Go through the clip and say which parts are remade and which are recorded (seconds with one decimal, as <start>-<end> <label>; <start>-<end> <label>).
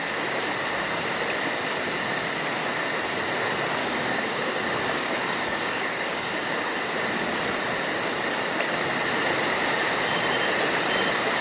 0.0-3.8 recorded; 3.8-6.9 remade; 6.9-11.4 recorded